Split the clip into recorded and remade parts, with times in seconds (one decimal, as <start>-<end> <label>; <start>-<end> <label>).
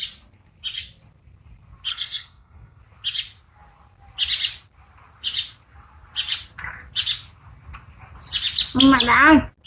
0.0-1.9 recorded; 1.9-2.8 remade; 2.8-9.7 recorded